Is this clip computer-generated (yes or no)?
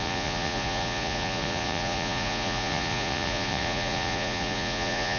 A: yes